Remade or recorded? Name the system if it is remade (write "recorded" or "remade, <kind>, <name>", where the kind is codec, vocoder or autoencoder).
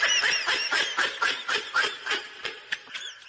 remade, vocoder, BigVGAN v2